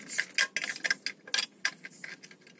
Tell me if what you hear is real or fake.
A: real